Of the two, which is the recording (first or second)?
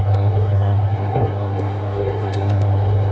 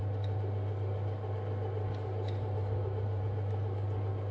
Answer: second